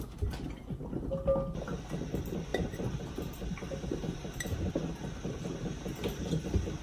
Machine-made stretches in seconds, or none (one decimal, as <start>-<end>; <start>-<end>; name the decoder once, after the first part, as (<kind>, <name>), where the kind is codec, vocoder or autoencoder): 2.5-4.7 (vocoder, BigVGAN v2)